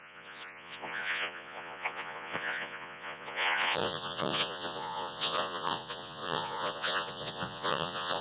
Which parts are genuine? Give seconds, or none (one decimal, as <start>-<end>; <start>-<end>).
none